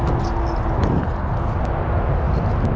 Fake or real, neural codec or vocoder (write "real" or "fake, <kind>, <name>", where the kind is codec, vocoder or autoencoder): real